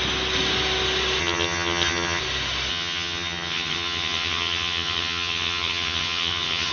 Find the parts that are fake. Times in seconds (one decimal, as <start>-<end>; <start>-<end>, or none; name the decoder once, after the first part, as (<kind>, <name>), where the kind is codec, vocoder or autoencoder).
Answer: 1.2-2.2 (vocoder, HiFi-GAN); 2.7-6.7